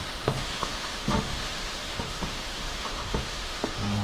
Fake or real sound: fake